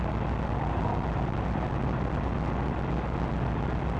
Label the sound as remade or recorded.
recorded